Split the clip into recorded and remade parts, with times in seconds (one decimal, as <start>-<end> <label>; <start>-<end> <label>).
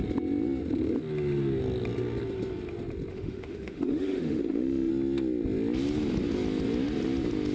0.0-3.1 recorded; 3.1-4.9 remade; 4.9-7.5 recorded